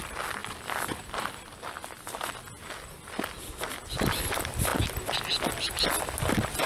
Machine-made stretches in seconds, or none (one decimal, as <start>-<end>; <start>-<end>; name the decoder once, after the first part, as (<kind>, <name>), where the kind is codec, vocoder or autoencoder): none